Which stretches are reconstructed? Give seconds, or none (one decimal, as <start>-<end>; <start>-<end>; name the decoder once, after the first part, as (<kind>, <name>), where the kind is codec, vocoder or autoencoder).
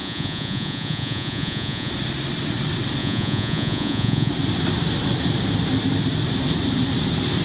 0.0-1.9 (vocoder, Vocos); 3.0-4.3